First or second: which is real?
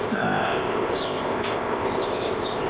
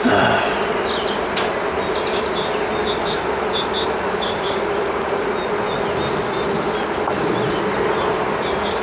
second